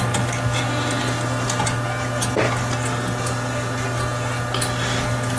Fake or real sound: real